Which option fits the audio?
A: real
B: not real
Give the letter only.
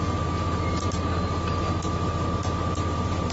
A